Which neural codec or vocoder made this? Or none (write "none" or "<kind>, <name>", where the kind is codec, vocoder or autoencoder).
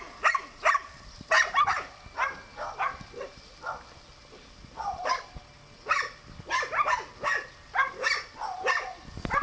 none